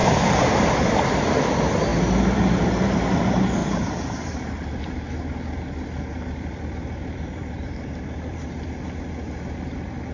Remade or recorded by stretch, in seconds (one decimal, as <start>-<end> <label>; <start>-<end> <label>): 0.0-3.6 recorded; 3.6-4.7 remade; 4.7-6.1 recorded; 6.1-9.0 remade; 9.0-10.1 recorded